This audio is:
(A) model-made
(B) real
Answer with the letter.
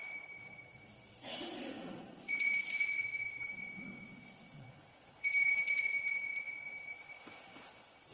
A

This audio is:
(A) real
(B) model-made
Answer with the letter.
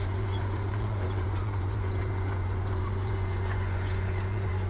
B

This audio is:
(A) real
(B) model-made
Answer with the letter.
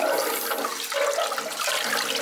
A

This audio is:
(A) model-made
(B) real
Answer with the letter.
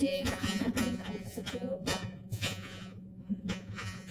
A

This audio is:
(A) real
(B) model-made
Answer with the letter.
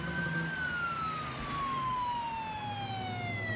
A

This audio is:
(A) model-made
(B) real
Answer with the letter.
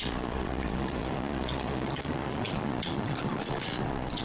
A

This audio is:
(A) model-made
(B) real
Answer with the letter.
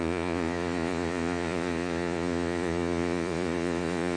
A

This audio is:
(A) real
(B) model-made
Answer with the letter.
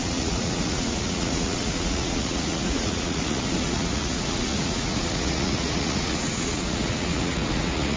B